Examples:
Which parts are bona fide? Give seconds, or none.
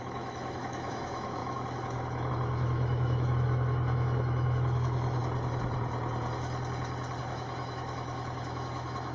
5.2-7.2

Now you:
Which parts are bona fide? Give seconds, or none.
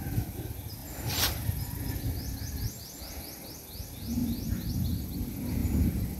0.0-0.8; 1.9-4.2; 5.0-5.6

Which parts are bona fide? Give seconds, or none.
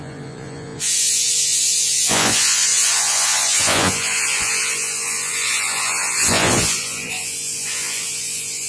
none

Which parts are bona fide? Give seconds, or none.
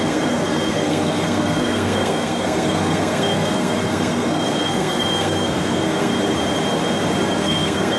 6.1-7.2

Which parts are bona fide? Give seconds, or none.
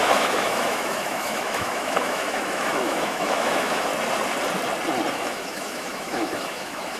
3.9-5.1